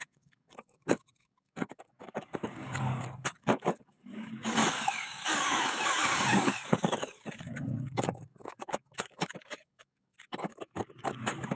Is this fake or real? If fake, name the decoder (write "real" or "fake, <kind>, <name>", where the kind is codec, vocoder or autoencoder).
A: fake, codec, DAC